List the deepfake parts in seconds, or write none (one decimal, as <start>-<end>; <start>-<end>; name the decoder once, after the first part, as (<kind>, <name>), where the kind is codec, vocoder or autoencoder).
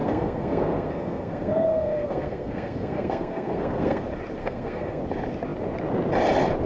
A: 0.0-4.0 (codec, SNAC); 4.4-5.0